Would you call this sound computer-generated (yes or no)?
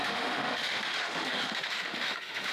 yes